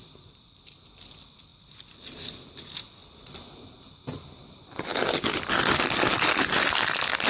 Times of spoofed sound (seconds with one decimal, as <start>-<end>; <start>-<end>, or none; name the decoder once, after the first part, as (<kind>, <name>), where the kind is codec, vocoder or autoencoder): 0.0-1.5 (vocoder, BigVGAN v2); 4.3-7.3